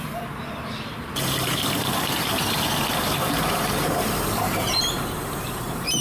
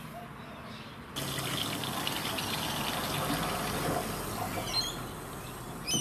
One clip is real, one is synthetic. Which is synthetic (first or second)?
first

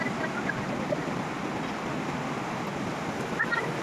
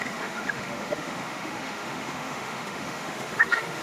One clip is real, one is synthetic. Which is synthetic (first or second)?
second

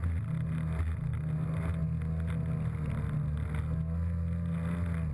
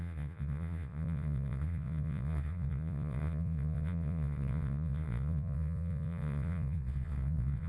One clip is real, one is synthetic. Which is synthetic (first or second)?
second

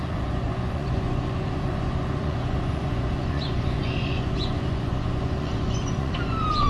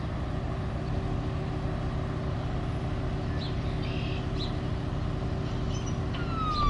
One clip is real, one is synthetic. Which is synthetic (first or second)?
first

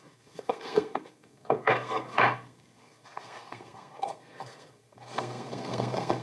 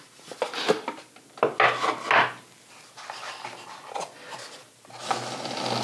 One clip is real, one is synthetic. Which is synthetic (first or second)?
first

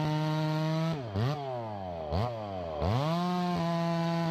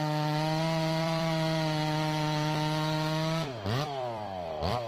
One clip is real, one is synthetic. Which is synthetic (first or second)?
second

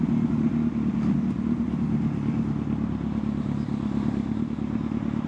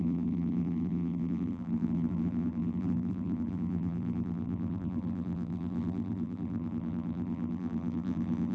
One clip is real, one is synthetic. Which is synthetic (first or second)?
second